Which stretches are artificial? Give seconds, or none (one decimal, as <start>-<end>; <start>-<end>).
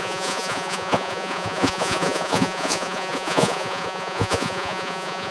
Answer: 0.0-5.3